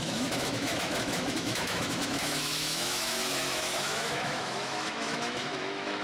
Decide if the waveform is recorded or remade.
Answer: remade